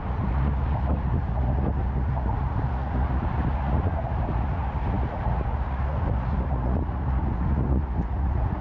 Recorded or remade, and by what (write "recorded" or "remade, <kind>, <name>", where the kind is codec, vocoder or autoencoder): remade, vocoder, Vocos